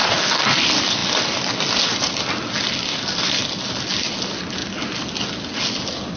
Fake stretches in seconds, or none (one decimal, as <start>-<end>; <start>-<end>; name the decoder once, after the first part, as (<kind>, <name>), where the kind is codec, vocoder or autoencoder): 0.0-0.5 (codec, SNAC)